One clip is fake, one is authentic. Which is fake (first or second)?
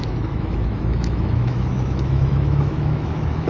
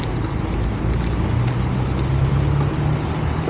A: first